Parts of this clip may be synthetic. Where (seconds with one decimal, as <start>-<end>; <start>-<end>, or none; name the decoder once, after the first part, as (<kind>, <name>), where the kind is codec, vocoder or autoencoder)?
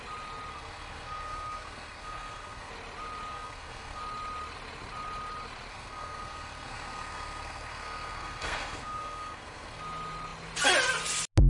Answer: 0.5-2.7 (codec, SNAC); 3.3-4.0; 5.7-9.8